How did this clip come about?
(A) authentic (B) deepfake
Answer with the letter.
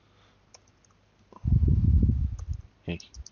A